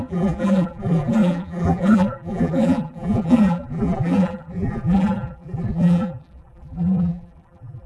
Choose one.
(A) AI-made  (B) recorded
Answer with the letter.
A